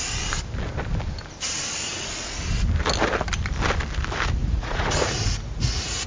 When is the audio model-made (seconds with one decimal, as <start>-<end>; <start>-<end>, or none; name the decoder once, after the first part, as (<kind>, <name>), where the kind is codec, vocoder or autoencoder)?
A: 4.4-6.1 (vocoder, Vocos)

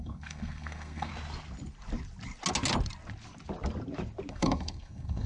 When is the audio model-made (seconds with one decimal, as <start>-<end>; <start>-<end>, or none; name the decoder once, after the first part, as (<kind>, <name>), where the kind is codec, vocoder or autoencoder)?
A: 0.0-1.1 (codec, SNAC); 4.3-5.3

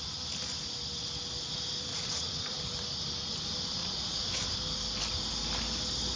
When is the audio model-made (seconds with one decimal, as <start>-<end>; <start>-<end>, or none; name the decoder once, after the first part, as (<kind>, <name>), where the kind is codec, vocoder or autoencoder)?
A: 1.9-2.6 (vocoder, Vocos); 3.8-4.4

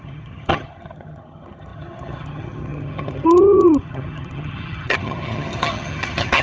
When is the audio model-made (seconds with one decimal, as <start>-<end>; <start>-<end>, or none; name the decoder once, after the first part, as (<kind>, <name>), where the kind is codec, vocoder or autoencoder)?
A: 0.0-6.4 (vocoder, HiFi-GAN)

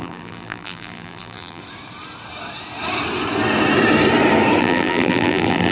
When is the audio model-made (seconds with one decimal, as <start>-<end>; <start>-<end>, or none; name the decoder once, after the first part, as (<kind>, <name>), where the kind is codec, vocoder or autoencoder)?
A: 0.0-1.6 (vocoder, BigVGAN v2); 4.6-5.7

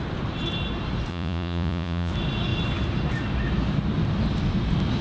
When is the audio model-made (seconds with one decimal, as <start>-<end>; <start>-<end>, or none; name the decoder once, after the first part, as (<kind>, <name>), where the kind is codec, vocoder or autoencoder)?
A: 1.1-2.1 (vocoder, Vocos)

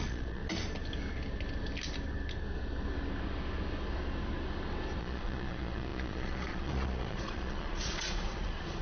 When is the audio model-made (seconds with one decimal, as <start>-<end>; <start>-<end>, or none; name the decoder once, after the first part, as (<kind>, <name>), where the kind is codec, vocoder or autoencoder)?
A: 0.0-0.4 (vocoder, Vocos); 5.0-8.8

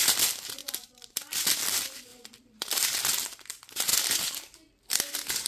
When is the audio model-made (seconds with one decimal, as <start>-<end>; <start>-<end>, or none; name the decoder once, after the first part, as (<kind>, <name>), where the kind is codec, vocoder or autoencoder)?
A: 2.1-2.7 (vocoder, BigVGAN v2)